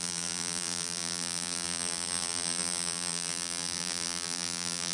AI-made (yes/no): yes